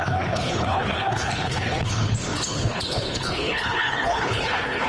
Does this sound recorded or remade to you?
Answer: remade